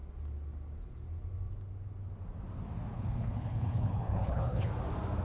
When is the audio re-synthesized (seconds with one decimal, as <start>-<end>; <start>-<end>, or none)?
2.9-4.7